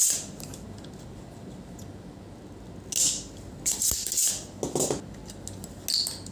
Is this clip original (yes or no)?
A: yes